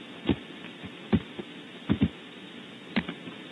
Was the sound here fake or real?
real